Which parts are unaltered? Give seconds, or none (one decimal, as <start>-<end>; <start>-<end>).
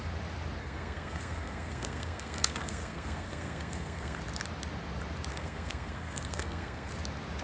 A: 0.0-0.6; 4.2-5.3; 6.9-7.4